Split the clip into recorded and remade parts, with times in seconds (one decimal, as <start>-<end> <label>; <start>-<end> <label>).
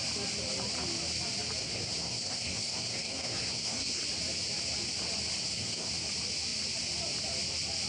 0.0-1.6 recorded; 1.6-4.0 remade; 4.0-5.4 recorded; 5.4-5.9 remade; 5.9-7.9 recorded